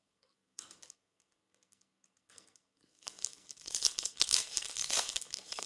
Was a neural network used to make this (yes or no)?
yes